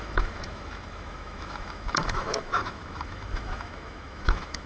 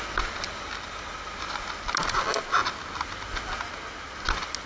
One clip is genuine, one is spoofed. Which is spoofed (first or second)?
first